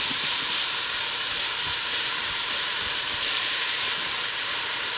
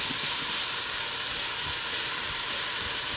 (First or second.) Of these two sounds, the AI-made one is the first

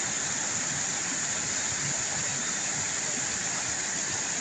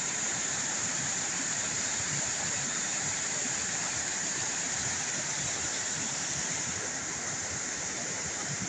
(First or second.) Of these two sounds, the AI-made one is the second